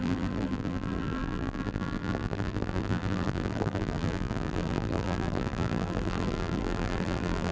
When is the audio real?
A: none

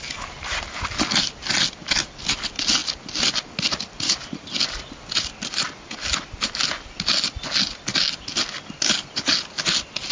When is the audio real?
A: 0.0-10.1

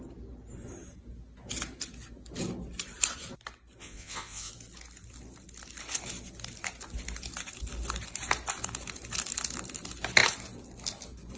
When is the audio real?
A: 0.0-3.8; 4.5-11.4